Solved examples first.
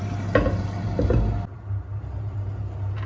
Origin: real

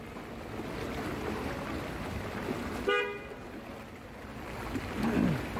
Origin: real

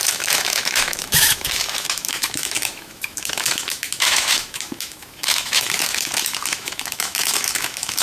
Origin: fake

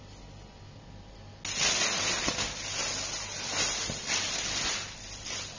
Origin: real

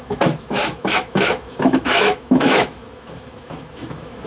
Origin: fake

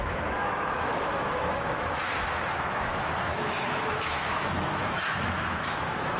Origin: fake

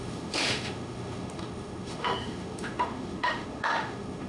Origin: fake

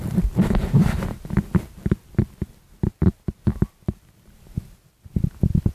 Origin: real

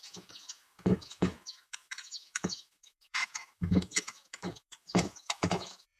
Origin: fake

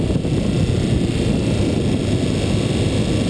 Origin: real